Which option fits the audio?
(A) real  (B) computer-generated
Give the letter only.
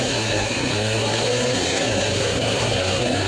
B